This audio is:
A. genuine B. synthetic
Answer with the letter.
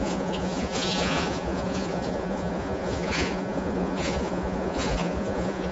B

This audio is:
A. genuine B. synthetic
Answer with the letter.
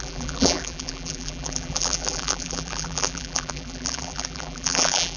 B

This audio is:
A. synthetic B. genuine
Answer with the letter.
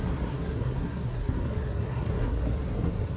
A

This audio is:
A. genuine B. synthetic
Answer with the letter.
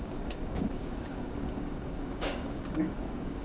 B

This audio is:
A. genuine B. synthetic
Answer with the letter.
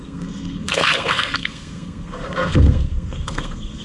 B